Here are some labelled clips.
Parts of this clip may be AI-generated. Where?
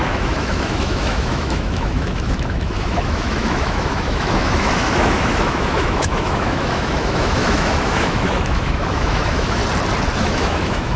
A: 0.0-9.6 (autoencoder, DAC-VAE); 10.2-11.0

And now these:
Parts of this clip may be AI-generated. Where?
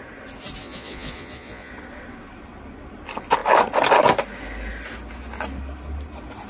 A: 0.6-1.7 (vocoder, Vocos)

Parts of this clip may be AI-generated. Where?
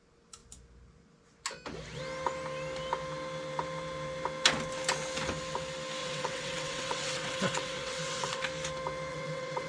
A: 6.0-8.4 (vocoder, WaveNeXt); 9.1-9.7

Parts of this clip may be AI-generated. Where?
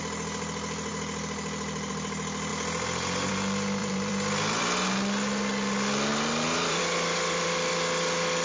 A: 3.8-4.6 (vocoder, BigVGAN v2); 6.1-6.8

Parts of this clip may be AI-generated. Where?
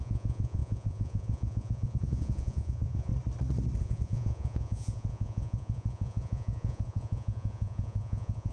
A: 0.0-3.1 (vocoder, Vocos); 3.8-8.5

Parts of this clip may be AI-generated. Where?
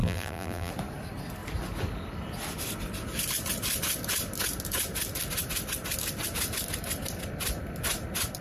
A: 0.0-0.7 (vocoder, BigVGAN v2)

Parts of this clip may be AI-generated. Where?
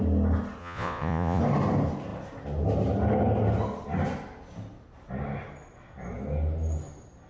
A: 0.6-1.4 (vocoder, Vocos)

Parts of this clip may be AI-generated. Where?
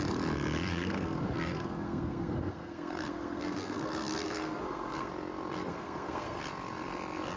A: 0.7-5.1 (codec, SNAC); 5.6-6.4